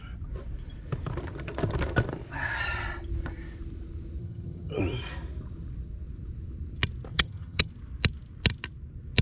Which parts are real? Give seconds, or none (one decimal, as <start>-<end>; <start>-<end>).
0.0-4.2; 4.8-7.1; 7.7-9.2

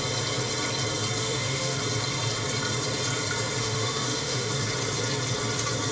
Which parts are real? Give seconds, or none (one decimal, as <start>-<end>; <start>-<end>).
0.0-1.2; 1.8-3.6; 4.5-5.9

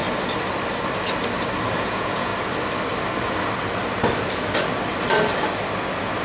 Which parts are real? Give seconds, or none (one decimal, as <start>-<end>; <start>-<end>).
0.0-1.8; 2.3-6.2